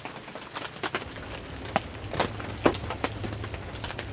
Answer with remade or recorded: recorded